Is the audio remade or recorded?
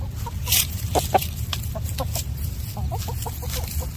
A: recorded